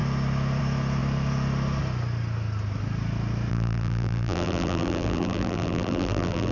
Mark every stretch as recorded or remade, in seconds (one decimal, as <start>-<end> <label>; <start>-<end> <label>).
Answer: 0.0-3.5 recorded; 3.5-6.5 remade